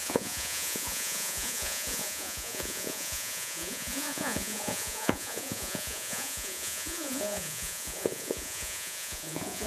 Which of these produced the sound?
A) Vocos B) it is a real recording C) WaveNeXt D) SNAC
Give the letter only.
A